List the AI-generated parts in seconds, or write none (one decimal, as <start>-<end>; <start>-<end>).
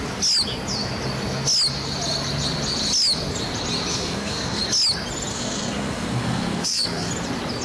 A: 3.9-4.6; 5.3-7.1